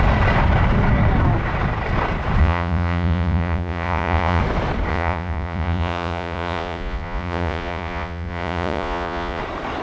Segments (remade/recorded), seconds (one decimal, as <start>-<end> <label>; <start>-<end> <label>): 0.0-2.4 recorded; 2.4-4.4 remade; 4.4-4.9 recorded; 4.9-9.4 remade; 9.4-9.8 recorded